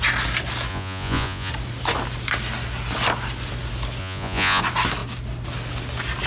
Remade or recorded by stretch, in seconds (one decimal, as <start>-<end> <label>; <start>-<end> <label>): 0.0-0.7 recorded; 0.7-1.5 remade; 1.5-4.0 recorded; 4.0-4.6 remade; 4.6-6.3 recorded